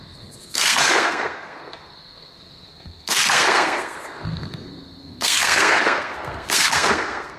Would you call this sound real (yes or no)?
no